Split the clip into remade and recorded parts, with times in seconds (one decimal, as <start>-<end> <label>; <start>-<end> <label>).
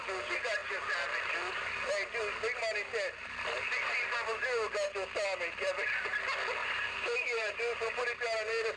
0.0-6.6 recorded; 6.6-7.6 remade; 7.6-8.8 recorded